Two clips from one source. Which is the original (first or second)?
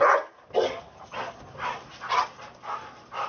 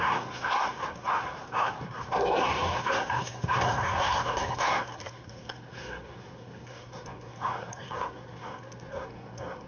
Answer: first